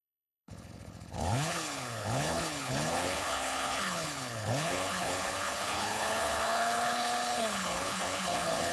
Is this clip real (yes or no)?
no